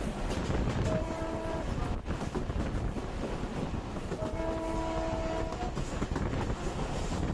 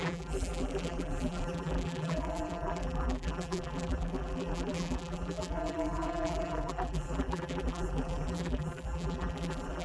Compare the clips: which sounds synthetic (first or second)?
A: second